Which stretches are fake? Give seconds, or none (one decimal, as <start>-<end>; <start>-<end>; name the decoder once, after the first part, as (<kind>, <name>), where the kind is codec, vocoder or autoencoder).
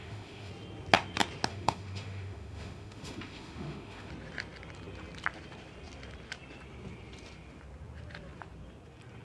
0.0-0.5 (autoencoder, DAC-VAE); 1.5-4.1